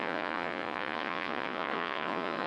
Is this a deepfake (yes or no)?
yes